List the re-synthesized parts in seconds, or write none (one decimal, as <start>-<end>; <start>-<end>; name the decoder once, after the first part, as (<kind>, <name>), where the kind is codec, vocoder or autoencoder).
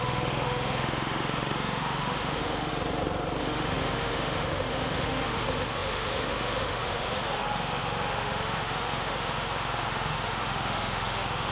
0.0-2.7 (autoencoder, DAC-VAE); 3.4-11.5